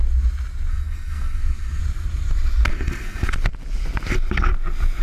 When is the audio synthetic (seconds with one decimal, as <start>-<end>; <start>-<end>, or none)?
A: 0.7-1.8; 2.7-3.3